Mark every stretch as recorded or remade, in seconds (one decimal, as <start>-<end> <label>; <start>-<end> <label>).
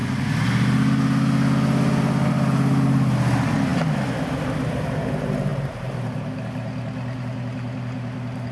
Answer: 0.0-5.5 recorded; 5.5-6.4 remade; 6.4-8.5 recorded